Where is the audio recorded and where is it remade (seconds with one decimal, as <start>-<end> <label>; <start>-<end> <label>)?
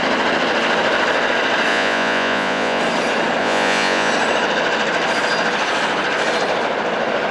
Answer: 0.0-1.7 recorded; 1.7-2.8 remade; 2.8-3.4 recorded; 3.4-4.1 remade; 4.1-7.3 recorded